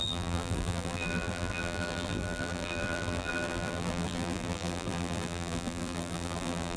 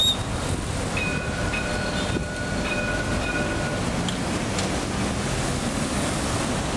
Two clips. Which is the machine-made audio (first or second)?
first